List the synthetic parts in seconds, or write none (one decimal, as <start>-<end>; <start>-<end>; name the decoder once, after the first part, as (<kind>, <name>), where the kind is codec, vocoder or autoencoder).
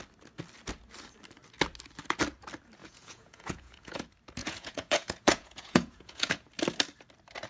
2.8-4.0 (vocoder, Vocos); 4.4-6.5